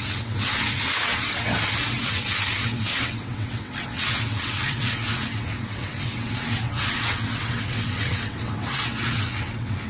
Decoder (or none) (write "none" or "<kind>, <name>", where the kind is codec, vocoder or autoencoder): vocoder, WaveNeXt